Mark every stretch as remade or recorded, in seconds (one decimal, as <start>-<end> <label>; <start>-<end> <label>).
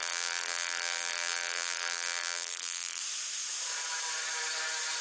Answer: 0.0-3.0 remade; 3.0-5.0 recorded